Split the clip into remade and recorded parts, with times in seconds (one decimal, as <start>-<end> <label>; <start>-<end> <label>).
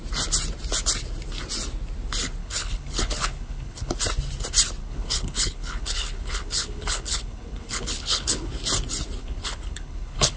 0.0-2.4 recorded; 2.4-3.9 remade; 3.9-4.8 recorded; 4.8-8.5 remade; 8.5-9.2 recorded; 9.2-10.4 remade